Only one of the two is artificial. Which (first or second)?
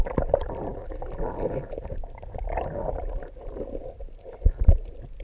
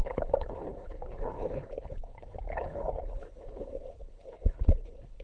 second